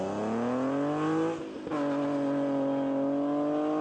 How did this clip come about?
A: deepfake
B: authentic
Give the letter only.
B